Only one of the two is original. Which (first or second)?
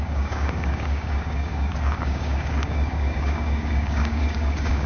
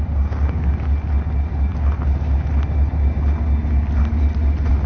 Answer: second